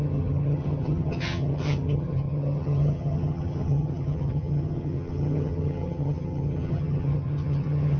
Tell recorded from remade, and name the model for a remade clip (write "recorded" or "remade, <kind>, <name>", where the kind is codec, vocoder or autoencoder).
remade, vocoder, HiFi-GAN